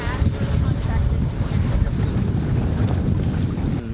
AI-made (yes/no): no